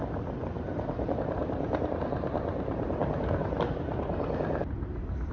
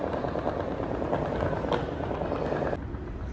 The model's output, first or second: first